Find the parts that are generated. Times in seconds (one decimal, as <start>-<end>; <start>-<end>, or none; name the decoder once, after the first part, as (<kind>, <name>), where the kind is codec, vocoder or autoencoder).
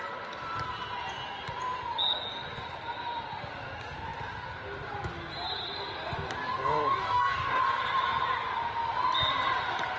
6.6-7.6 (codec, DAC)